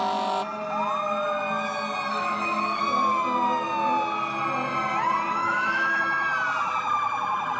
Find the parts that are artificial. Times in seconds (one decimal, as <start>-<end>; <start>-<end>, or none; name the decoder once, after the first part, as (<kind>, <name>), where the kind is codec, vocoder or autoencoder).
2.1-2.8 (autoencoder, DAC-VAE); 5.4-6.0